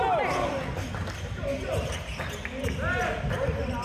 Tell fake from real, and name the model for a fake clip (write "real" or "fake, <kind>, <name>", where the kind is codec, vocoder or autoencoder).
real